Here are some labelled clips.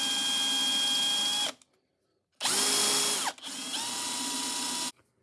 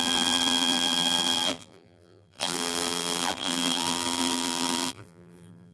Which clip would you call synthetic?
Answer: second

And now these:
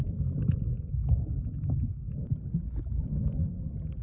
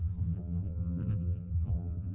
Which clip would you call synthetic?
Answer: second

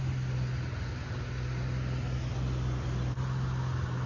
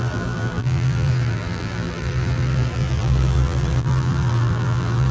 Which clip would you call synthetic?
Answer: second